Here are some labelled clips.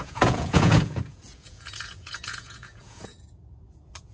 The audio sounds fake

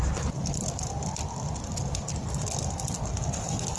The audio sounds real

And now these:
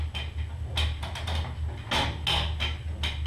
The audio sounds real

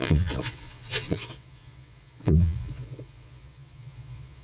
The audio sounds fake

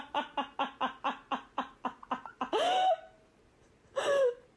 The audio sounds real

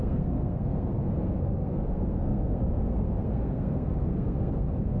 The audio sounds fake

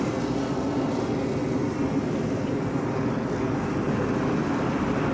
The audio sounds real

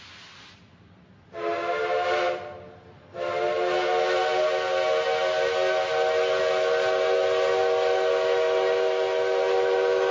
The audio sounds real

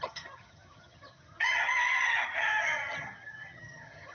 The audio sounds fake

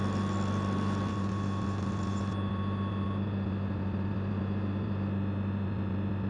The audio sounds real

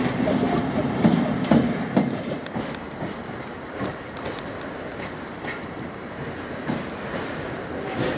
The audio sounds real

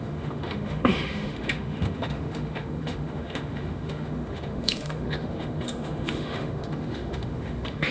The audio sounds fake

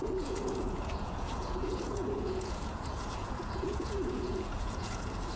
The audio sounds fake